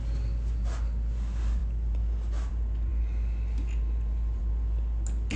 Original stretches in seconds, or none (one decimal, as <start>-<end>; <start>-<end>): 0.0-5.4